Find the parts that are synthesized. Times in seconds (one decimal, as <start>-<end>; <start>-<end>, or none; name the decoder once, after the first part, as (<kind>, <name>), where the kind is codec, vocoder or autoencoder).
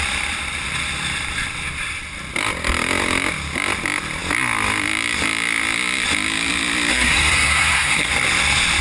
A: 6.9-8.1 (codec, SNAC)